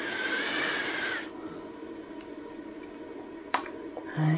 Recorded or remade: recorded